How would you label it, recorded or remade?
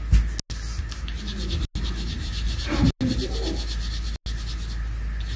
recorded